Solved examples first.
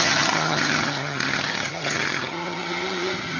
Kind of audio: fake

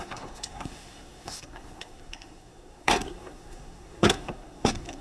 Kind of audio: fake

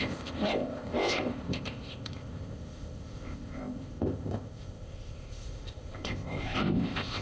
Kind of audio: fake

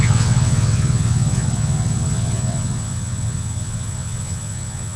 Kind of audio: fake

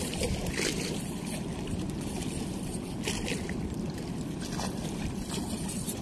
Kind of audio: fake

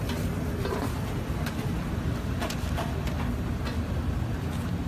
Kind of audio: real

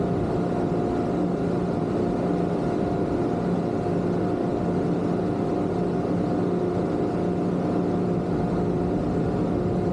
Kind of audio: real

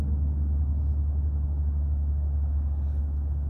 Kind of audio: real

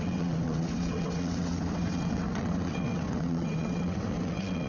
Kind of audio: fake